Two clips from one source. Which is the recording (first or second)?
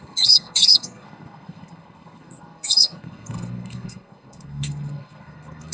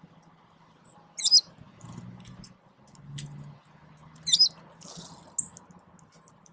second